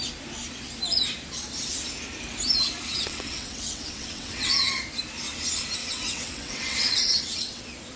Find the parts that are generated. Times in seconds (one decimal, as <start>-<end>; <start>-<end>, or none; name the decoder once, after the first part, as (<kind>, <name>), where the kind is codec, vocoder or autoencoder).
2.9-4.8 (vocoder, WaveNeXt); 5.8-7.6